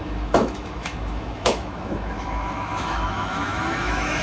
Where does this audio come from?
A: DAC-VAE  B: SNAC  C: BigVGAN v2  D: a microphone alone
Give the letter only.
A